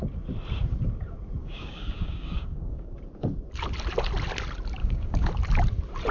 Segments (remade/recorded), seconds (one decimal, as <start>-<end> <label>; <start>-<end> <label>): 0.0-1.4 recorded; 1.4-2.9 remade; 2.9-4.8 recorded; 4.8-5.3 remade; 5.3-6.1 recorded